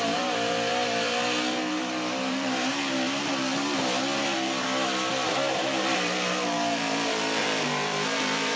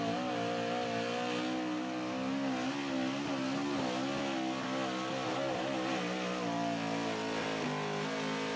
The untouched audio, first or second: second